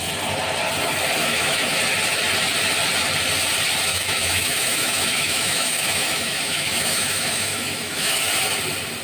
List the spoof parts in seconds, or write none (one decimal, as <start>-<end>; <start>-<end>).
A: 1.2-1.8; 3.9-8.2